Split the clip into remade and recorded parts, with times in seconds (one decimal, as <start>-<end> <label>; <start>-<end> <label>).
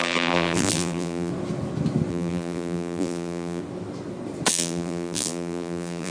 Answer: 0.0-1.3 remade; 1.3-2.1 recorded; 2.1-3.6 remade; 3.6-4.5 recorded; 4.5-6.1 remade